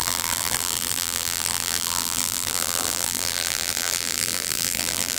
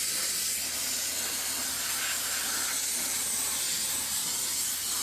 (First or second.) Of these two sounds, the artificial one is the first